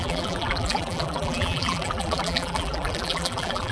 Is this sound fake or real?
fake